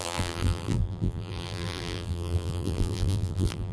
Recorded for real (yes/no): no